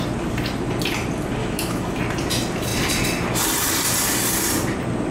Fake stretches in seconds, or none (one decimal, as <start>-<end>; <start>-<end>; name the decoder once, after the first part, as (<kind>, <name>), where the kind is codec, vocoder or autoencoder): 1.4-2.0 (autoencoder, DAC-VAE)